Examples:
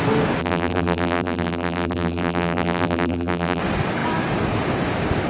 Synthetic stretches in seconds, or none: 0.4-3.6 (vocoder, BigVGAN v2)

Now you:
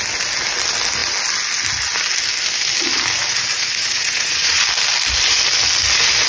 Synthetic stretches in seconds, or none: 3.3-4.6 (vocoder, Vocos)

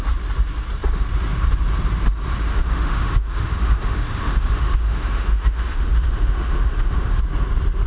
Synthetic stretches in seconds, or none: 2.5-7.2 (autoencoder, DAC-VAE)

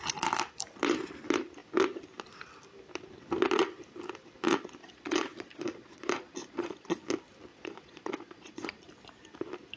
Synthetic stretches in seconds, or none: 4.8-7.0 (vocoder, Vocos); 7.5-8.9